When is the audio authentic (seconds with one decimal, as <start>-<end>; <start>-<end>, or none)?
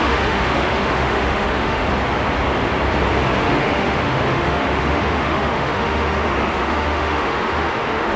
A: 1.9-3.4